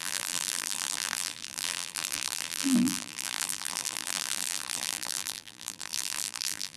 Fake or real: fake